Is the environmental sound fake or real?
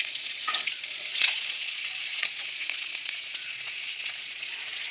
fake